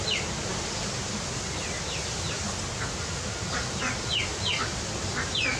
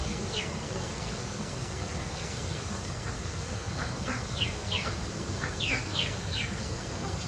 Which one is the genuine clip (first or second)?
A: first